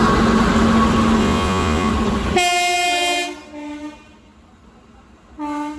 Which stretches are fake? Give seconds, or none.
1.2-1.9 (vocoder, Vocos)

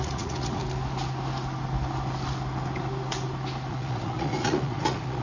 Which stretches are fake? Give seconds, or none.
0.0-0.6 (vocoder, Vocos); 3.7-5.2

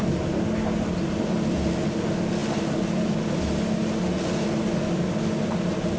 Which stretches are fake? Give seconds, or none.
none

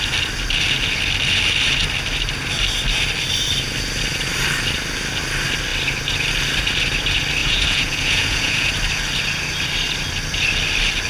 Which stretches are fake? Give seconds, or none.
7.4-8.7 (vocoder, Vocos)